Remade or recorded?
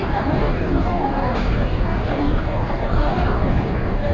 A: remade